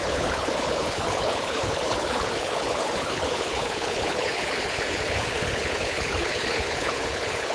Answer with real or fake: fake